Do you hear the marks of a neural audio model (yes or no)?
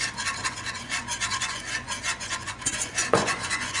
yes